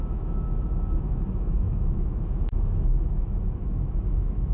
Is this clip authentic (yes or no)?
no